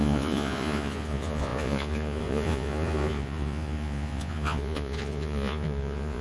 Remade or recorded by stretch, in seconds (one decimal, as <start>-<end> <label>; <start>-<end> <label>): 0.0-6.2 remade